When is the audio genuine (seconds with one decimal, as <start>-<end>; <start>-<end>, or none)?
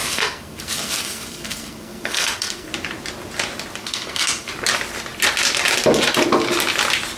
2.7-3.8; 4.5-7.2